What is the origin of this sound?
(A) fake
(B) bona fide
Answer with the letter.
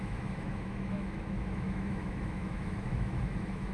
A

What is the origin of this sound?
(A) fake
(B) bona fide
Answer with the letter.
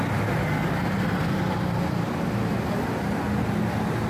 B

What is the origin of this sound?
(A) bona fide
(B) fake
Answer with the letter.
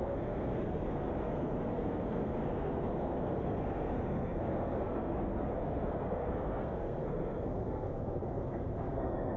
B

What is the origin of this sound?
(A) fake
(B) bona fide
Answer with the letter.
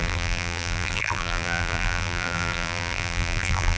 A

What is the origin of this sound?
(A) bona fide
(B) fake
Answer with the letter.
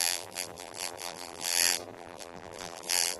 B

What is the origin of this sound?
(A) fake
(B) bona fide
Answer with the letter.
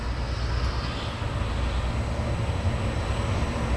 B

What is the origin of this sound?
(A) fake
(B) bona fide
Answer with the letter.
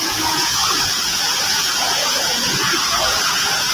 A